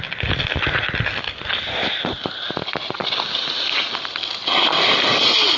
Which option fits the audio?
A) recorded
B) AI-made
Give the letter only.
A